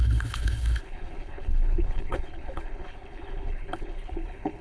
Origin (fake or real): fake